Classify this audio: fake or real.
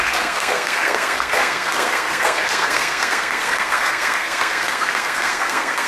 fake